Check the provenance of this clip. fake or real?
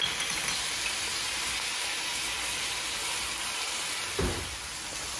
real